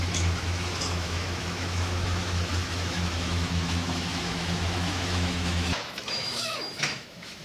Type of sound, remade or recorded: remade